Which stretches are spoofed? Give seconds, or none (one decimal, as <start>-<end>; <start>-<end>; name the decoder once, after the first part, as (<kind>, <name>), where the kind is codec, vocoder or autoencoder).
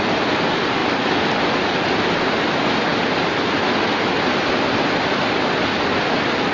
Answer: none